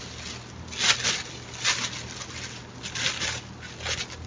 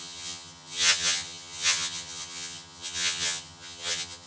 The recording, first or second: first